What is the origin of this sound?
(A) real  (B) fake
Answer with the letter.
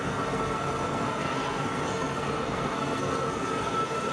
B